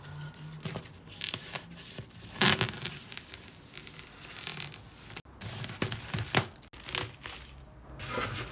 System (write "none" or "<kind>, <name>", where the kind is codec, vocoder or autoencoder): none